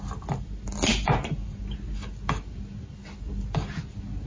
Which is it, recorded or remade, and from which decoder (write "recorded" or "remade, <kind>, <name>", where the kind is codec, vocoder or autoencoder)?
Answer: recorded